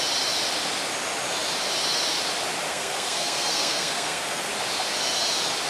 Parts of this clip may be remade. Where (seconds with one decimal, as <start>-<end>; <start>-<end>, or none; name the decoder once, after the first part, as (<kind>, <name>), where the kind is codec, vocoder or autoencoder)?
2.7-4.5 (codec, SNAC)